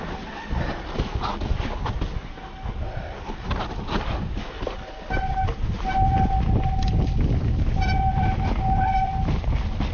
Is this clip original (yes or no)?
yes